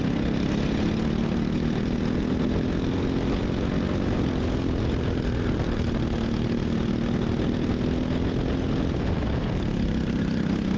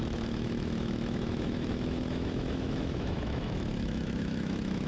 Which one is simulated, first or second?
second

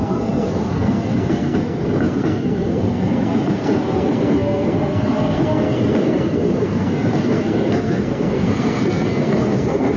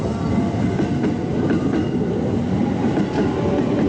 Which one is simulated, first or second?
first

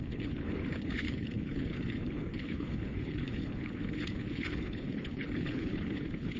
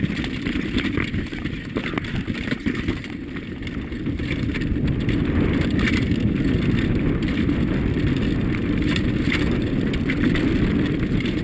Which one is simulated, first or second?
first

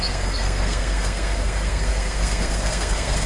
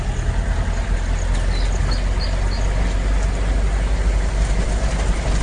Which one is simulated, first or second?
first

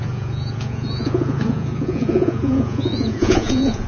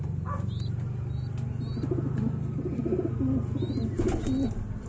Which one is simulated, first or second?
first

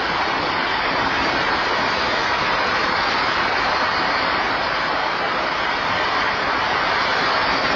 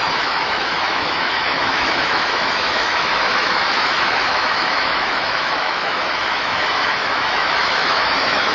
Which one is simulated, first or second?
second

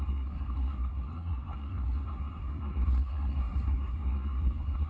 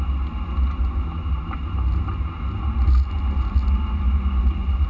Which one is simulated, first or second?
first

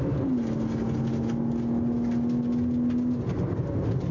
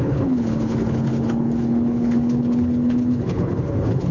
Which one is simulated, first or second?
second